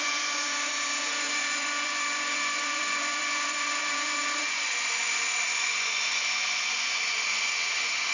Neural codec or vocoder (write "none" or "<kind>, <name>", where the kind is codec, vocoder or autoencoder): vocoder, Vocos